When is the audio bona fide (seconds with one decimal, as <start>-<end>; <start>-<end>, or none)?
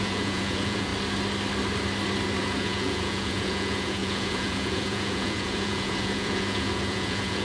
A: 0.9-2.4